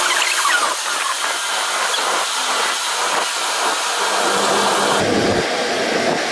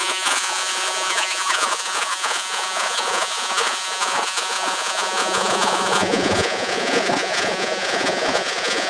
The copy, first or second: second